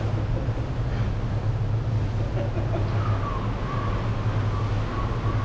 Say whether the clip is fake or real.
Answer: real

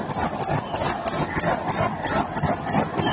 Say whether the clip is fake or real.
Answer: real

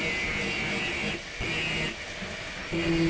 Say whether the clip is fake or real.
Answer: real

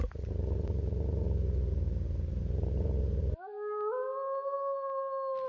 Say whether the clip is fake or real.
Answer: real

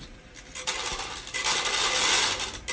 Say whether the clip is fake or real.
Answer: real